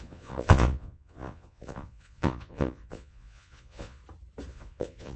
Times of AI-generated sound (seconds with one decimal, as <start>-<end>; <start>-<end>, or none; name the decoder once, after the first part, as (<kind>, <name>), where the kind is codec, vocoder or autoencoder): 0.0-4.0 (vocoder, Vocos); 4.5-5.2